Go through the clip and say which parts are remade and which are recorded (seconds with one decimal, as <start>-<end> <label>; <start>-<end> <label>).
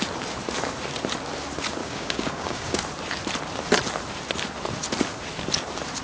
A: 0.0-1.8 recorded; 1.8-2.8 remade; 2.8-6.0 recorded